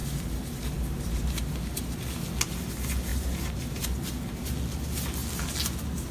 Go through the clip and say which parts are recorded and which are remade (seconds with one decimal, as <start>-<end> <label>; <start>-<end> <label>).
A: 0.0-1.5 remade; 1.5-3.1 recorded; 3.1-4.1 remade; 4.1-6.1 recorded